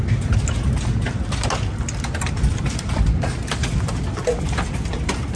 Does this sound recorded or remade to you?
recorded